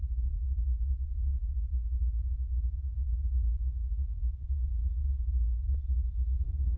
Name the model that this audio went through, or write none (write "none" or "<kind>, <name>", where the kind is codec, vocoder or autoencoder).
none